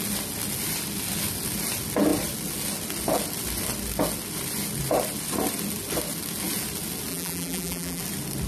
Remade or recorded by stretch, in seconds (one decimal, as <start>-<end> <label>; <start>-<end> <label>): 0.0-7.1 recorded; 7.1-8.0 remade; 8.0-8.5 recorded